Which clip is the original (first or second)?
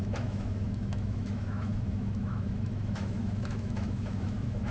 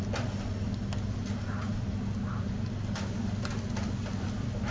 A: second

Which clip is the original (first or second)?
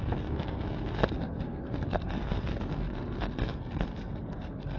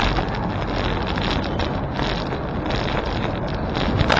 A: second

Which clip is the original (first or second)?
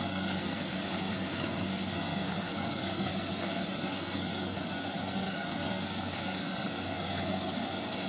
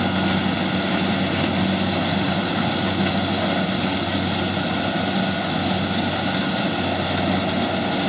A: second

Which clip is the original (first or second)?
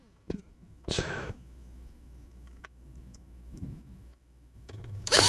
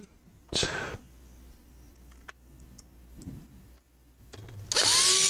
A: second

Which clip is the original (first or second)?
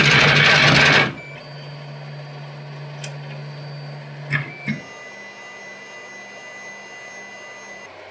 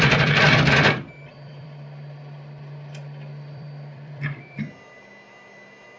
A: first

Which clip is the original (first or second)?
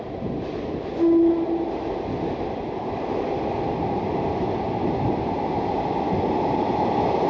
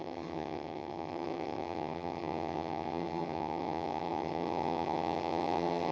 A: first